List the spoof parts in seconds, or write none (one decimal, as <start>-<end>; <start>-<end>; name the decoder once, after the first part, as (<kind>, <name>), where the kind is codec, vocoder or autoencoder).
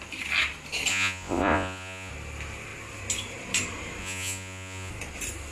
0.9-2.1 (vocoder, Vocos); 4.0-4.9